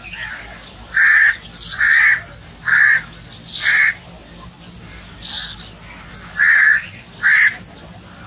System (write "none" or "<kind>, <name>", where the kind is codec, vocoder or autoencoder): none